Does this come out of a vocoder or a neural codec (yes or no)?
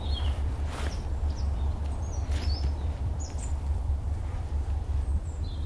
yes